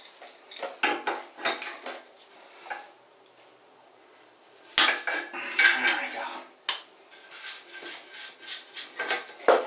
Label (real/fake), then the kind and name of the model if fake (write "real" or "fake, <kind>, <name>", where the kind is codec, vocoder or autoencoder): real